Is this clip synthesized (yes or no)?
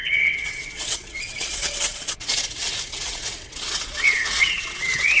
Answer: yes